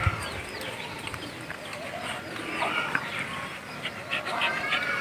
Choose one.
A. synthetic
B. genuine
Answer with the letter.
B